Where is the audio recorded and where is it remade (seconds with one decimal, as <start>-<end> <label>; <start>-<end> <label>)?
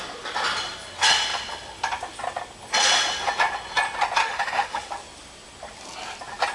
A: 0.0-4.2 recorded; 4.2-4.9 remade; 4.9-6.5 recorded